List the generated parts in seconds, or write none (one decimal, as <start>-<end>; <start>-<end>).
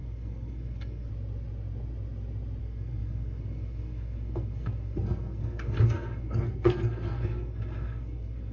0.0-1.1; 2.6-8.5